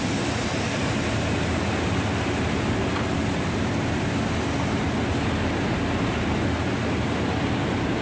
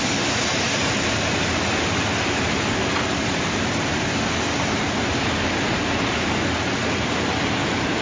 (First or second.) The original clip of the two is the first